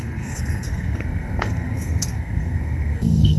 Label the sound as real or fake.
fake